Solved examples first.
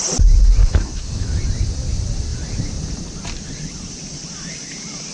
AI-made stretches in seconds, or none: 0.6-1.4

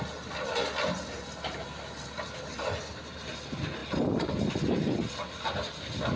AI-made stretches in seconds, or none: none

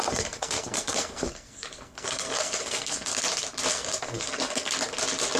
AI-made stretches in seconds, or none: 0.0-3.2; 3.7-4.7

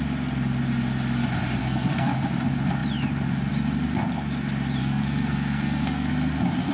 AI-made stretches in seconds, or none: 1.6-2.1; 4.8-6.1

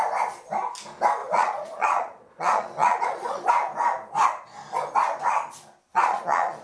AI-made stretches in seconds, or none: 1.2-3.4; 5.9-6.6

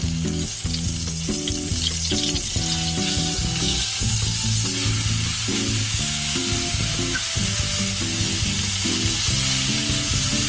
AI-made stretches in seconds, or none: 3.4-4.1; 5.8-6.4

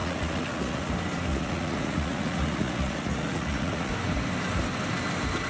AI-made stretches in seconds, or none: 0.0-0.9; 1.3-3.9

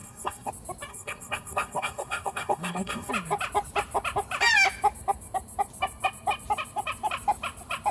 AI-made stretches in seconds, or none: 0.0-0.5; 0.9-3.1